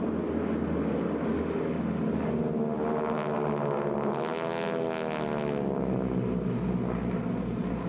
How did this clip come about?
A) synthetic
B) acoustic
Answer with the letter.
B